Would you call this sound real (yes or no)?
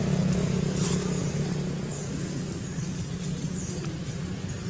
yes